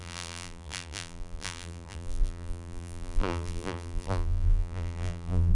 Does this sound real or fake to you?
fake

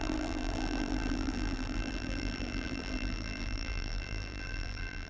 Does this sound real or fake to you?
fake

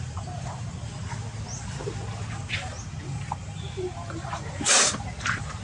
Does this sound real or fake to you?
real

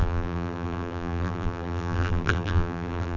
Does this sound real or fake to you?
fake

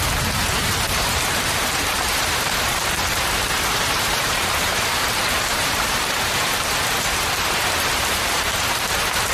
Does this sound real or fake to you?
fake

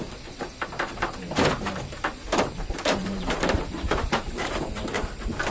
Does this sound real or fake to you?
fake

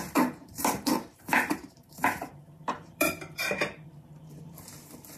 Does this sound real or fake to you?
fake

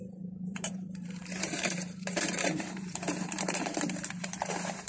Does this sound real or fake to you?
fake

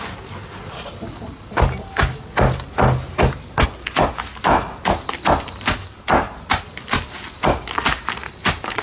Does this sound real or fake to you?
real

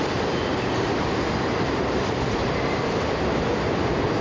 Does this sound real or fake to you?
fake